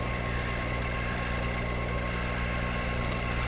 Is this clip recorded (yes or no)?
yes